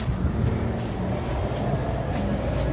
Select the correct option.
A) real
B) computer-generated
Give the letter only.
A